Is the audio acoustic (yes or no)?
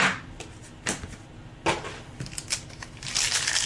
yes